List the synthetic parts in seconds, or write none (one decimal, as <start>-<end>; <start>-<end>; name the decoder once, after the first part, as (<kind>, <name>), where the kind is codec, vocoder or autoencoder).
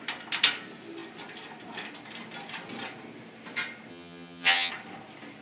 3.9-4.7 (vocoder, HiFi-GAN)